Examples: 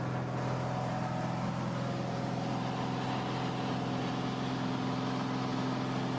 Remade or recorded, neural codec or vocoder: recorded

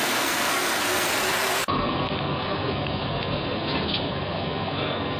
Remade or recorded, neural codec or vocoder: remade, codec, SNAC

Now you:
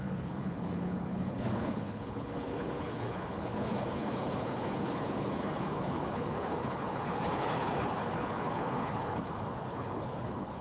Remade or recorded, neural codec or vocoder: remade, codec, HILCodec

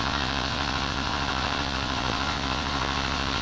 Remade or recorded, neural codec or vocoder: remade, vocoder, WaveNeXt